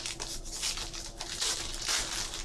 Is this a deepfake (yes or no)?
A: no